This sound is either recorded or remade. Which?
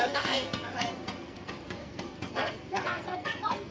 remade